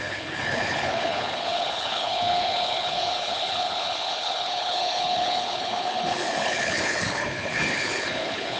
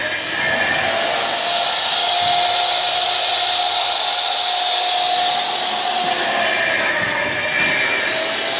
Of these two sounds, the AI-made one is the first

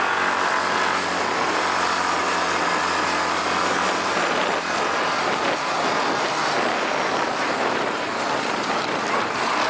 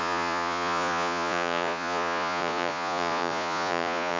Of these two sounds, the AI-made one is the second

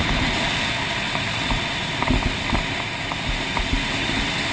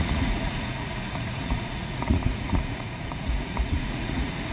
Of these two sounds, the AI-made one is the second